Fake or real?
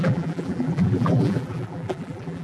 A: fake